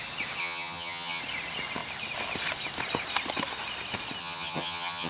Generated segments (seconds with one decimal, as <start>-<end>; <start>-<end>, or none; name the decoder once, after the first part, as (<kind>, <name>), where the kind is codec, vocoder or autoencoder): 0.4-1.2 (vocoder, HiFi-GAN); 4.2-5.1